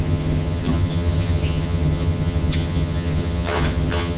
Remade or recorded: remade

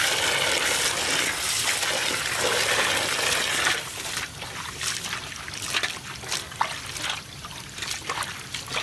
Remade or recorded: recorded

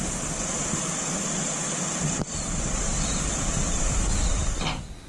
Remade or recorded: recorded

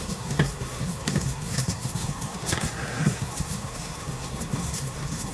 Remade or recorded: remade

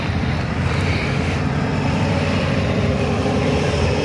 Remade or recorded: remade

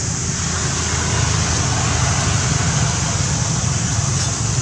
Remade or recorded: recorded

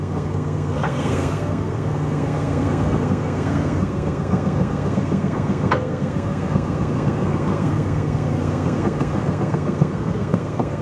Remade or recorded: remade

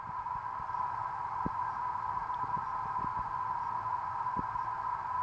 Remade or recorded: recorded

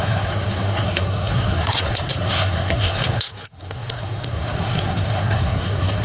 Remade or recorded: remade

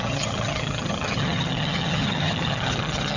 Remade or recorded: remade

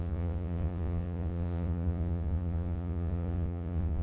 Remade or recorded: remade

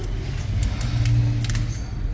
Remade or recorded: recorded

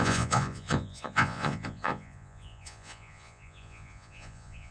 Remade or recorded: remade